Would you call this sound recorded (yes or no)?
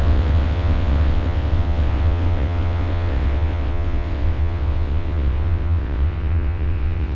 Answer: no